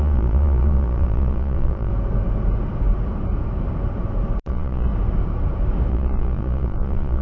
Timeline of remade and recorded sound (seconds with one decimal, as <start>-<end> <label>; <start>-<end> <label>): 0.0-1.9 remade; 1.9-4.4 recorded; 4.4-4.9 remade; 4.9-5.9 recorded; 5.9-7.2 remade